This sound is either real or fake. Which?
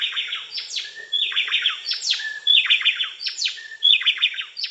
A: fake